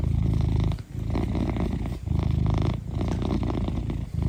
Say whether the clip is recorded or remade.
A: recorded